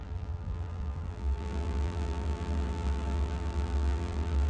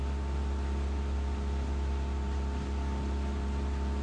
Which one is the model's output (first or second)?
first